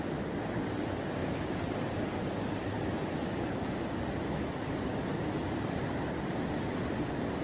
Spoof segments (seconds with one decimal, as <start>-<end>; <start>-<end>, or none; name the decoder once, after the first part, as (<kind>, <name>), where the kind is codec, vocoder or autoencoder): 1.2-2.1 (vocoder, BigVGAN v2); 5.1-6.3